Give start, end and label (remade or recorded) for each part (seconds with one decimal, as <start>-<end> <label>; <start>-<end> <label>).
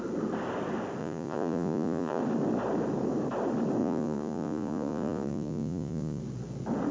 0.0-1.0 recorded; 1.0-2.2 remade; 2.2-3.8 recorded; 3.8-6.2 remade; 6.2-6.9 recorded